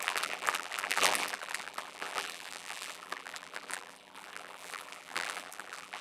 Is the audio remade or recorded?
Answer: remade